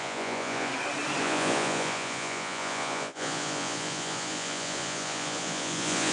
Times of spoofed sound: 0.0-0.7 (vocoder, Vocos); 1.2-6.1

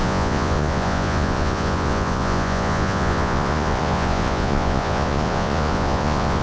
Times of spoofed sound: 0.0-6.4 (vocoder, Vocos)

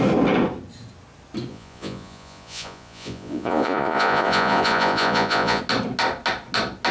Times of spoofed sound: 1.5-5.6 (vocoder, Vocos)

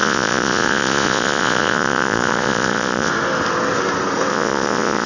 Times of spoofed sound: 0.0-3.1 (vocoder, Vocos); 4.3-5.1